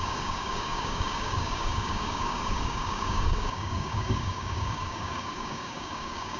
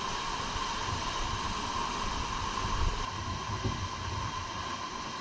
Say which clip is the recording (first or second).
second